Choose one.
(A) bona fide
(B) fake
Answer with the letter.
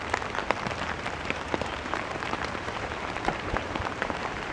B